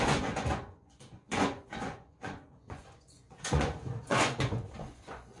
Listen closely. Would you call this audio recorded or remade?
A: remade